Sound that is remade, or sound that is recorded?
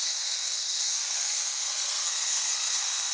remade